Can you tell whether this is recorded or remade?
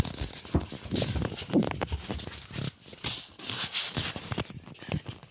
recorded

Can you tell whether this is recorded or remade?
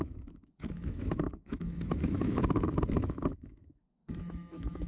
remade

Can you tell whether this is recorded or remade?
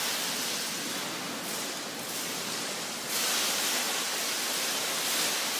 recorded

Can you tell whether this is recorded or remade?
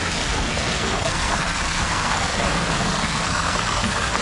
remade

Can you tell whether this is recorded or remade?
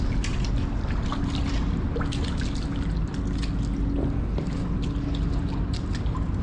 recorded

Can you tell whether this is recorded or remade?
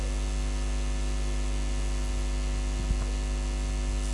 recorded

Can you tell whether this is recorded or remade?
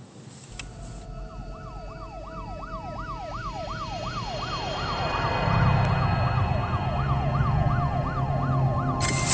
recorded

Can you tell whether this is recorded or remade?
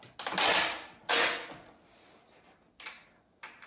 recorded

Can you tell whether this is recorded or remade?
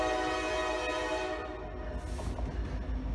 recorded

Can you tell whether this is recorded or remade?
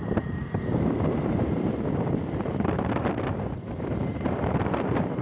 remade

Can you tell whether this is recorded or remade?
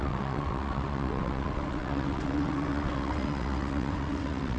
remade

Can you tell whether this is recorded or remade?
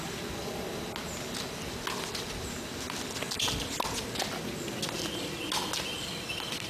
recorded